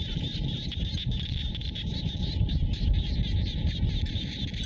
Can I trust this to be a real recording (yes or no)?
yes